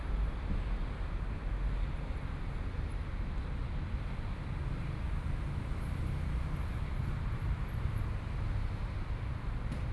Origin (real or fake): real